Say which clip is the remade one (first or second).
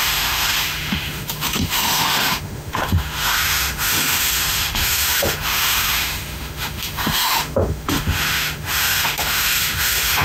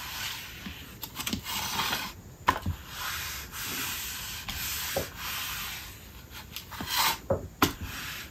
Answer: first